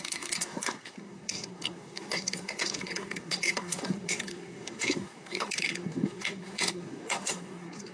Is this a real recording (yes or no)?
no